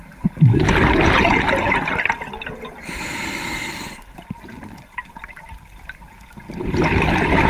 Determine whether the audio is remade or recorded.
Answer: remade